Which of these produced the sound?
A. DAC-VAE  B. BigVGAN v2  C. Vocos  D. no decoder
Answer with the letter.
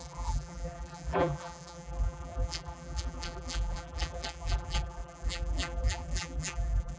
B